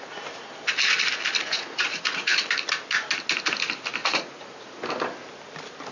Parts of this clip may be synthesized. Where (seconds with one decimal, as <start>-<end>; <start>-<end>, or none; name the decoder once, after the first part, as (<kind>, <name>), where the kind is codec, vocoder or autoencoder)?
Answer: 1.4-2.4 (vocoder, Vocos); 4.0-4.8